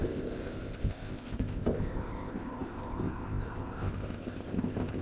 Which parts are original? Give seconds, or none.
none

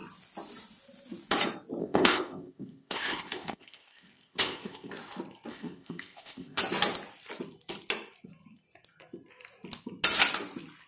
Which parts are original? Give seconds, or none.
0.0-1.8; 4.9-5.5; 6.6-10.9

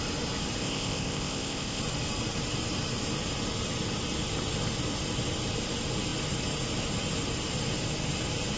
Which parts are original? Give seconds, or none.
0.0-0.6; 1.8-8.6

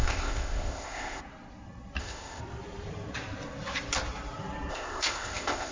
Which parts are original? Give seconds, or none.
1.2-2.0; 2.4-4.7